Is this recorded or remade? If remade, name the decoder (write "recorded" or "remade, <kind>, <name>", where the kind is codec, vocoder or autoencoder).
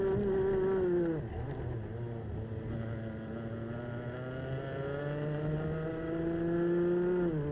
recorded